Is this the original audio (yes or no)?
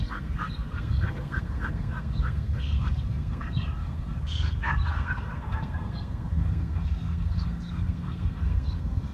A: no